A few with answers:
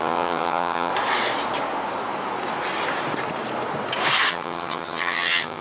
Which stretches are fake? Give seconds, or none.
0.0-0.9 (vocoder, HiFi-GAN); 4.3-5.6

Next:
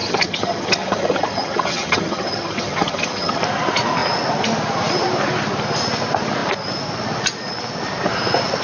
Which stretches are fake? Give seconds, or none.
0.0-3.4 (vocoder, HiFi-GAN)

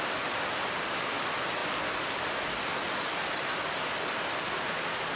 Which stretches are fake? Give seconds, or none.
none

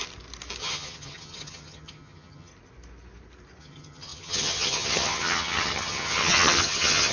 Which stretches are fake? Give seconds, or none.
0.6-2.5 (vocoder, HiFi-GAN); 3.6-7.1

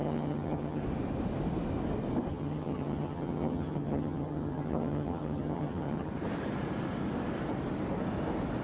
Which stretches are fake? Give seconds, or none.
0.0-0.8 (vocoder, HiFi-GAN); 2.3-6.1

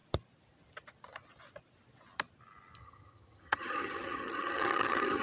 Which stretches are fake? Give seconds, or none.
2.8-5.2 (vocoder, HiFi-GAN)

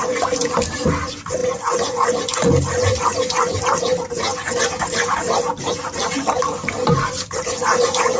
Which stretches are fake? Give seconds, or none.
none

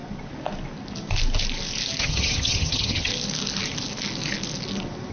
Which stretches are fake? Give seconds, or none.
2.0-3.1 (vocoder, HiFi-GAN)